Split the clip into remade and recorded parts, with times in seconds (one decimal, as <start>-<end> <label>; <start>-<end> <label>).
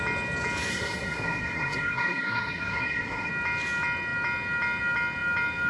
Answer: 0.0-0.7 recorded; 0.7-3.3 remade; 3.3-5.7 recorded